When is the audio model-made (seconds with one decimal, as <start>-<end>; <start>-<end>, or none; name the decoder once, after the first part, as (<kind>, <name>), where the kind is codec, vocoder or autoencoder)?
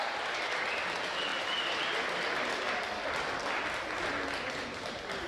none